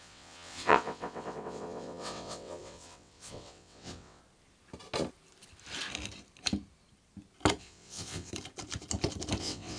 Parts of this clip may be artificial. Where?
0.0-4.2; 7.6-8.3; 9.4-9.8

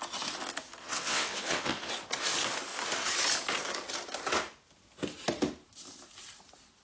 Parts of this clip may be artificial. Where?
0.8-1.9

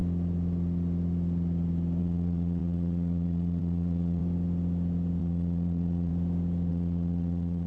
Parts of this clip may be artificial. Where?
2.0-4.2; 5.2-6.1; 6.7-7.7

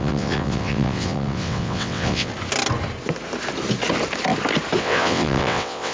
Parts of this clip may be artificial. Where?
0.0-2.3; 4.8-5.9

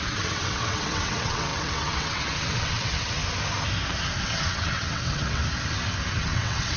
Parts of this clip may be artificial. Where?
0.0-3.2; 4.2-5.4; 6.1-6.8

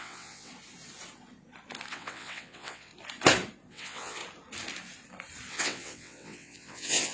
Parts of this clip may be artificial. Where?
0.0-0.5; 1.9-2.9; 3.7-4.2; 5.5-7.1

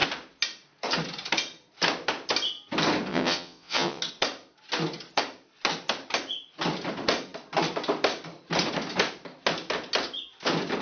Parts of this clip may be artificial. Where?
3.1-4.0

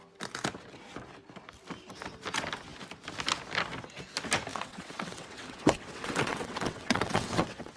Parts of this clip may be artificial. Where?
4.5-7.8